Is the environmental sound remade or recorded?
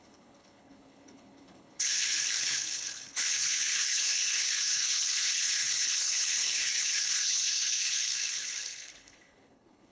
remade